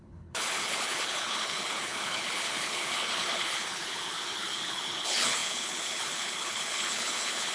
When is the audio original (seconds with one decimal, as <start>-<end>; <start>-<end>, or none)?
none

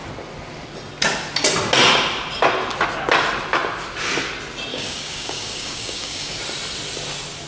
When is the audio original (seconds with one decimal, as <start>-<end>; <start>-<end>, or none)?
0.0-4.7; 6.4-7.5

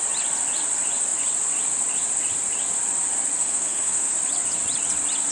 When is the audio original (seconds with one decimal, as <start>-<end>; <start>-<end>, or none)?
0.0-3.4; 4.1-5.3

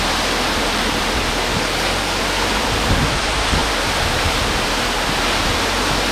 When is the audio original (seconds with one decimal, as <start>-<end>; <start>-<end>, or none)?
0.0-1.5; 2.2-6.1

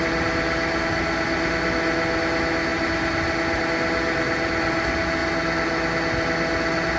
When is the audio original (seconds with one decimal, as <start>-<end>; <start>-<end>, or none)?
0.0-7.0

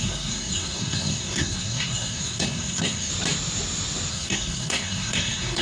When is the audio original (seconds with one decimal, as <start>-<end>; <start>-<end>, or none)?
3.1-4.1